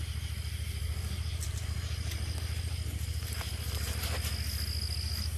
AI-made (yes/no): no